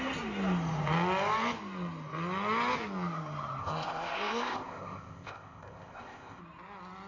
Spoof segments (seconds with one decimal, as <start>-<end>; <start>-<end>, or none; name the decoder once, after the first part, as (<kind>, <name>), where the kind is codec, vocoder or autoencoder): 3.6-6.4 (codec, ZipCodec)

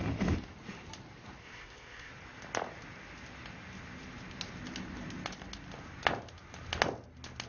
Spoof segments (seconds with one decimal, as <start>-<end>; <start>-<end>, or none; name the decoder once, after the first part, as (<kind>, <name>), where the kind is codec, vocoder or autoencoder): 1.4-2.1 (codec, ZipCodec)

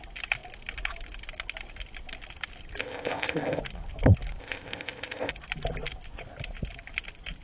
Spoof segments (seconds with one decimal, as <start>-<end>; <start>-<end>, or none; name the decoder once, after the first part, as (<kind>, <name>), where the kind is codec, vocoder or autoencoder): 2.8-3.6 (codec, ZipCodec); 4.4-5.3

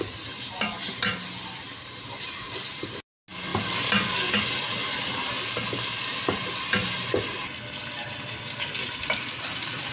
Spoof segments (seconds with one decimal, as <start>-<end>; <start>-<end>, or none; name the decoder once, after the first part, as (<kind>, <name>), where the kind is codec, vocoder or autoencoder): none

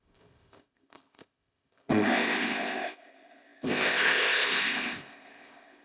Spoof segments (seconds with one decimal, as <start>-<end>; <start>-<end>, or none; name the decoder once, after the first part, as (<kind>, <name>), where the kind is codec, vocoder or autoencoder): 0.0-5.8 (codec, ZipCodec)

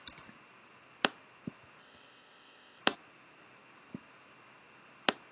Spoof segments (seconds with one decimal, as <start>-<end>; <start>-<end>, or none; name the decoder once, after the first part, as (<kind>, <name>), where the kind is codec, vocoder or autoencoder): 1.8-2.8 (codec, ZipCodec)

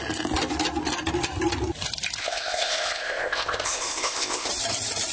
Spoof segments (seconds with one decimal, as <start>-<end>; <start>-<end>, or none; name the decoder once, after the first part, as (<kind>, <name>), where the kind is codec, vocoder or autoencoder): 2.2-4.5 (codec, ZipCodec)

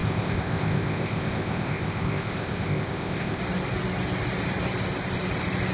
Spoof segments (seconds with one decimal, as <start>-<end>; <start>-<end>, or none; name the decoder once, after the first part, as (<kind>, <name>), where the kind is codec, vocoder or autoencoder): 0.0-3.4 (codec, ZipCodec)